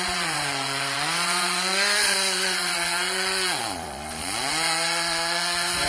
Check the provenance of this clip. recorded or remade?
remade